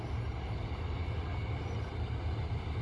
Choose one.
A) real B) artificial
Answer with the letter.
A